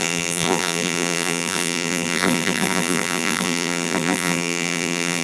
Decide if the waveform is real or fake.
fake